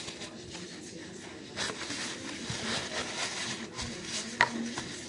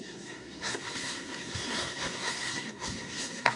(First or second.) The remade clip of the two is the second